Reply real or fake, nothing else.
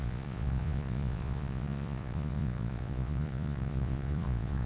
fake